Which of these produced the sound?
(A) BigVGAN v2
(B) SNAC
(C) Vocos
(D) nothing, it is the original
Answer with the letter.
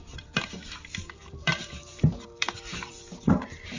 A